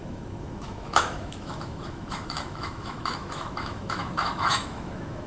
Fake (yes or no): yes